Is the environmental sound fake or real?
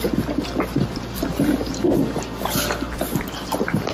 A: real